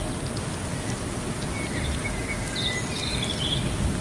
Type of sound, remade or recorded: recorded